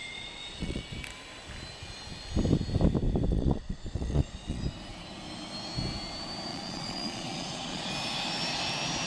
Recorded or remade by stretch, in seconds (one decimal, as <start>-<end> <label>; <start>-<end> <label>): 0.0-0.8 remade; 0.8-3.3 recorded; 3.3-4.6 remade; 4.6-6.5 recorded; 6.5-7.9 remade; 7.9-9.1 recorded